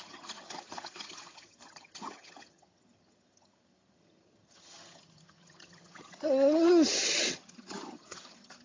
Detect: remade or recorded remade